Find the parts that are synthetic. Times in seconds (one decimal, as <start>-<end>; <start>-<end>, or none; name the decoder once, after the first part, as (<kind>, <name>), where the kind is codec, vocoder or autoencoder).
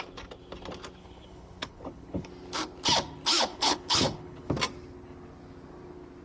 1.0-2.3 (codec, HILCodec); 3.5-4.5